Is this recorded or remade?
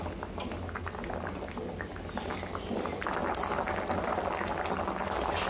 recorded